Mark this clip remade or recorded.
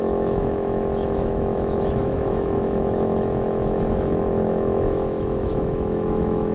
remade